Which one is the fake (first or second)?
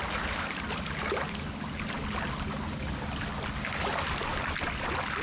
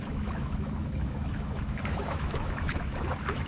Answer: second